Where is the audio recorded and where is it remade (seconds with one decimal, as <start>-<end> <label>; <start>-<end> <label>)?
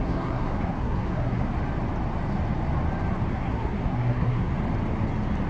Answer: 0.0-1.5 remade; 1.5-3.3 recorded; 3.3-4.5 remade; 4.5-5.5 recorded